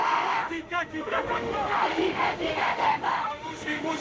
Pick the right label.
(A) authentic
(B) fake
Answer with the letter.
B